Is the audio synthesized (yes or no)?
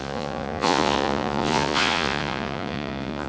yes